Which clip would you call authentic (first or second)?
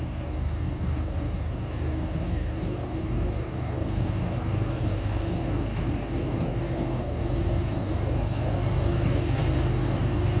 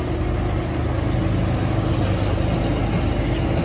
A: second